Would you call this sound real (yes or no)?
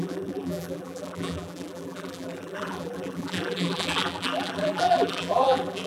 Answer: no